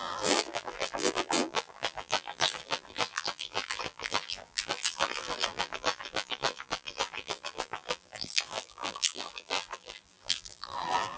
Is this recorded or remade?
remade